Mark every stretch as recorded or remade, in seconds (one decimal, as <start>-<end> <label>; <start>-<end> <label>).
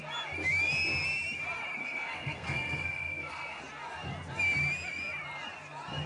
0.0-1.8 recorded; 1.8-3.6 remade; 3.6-6.1 recorded